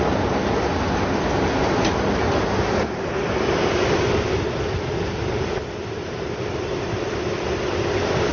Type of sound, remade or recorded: recorded